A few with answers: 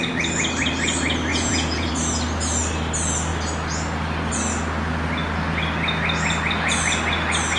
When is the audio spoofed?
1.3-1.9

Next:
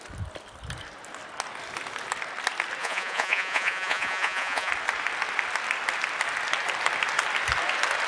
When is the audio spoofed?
2.8-4.7